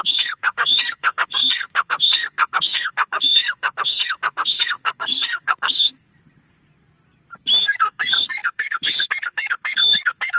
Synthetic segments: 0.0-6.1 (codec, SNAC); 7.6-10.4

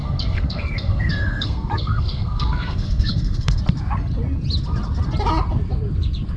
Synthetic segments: 0.0-3.6 (codec, SNAC)

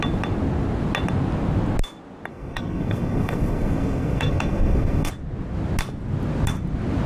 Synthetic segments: 2.3-5.1 (codec, SNAC)

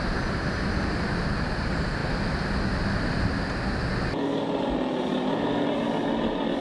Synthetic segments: none